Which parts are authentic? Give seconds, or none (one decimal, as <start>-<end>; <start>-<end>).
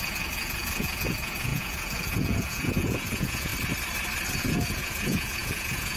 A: 3.5-4.4